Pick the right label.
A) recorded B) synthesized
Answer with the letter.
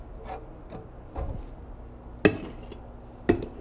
A